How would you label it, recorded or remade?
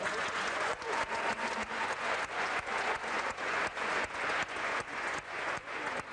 remade